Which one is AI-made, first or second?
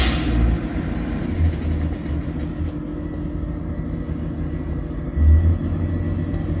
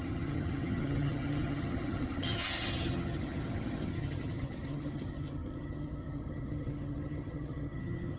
second